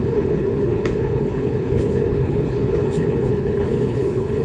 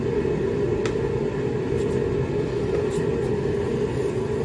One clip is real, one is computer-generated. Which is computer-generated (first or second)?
first